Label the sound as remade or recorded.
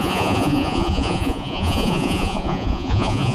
remade